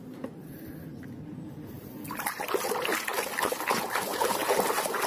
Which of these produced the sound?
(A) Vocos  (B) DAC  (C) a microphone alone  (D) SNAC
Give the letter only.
C